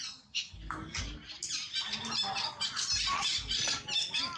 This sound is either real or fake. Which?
real